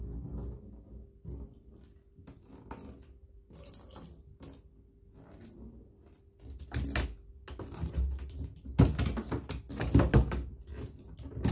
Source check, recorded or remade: recorded